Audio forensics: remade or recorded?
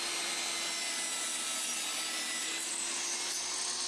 recorded